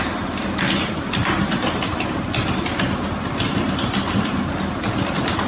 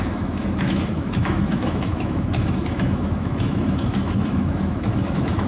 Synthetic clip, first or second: second